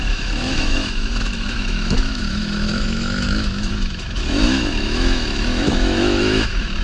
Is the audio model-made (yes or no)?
yes